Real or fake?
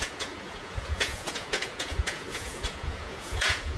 fake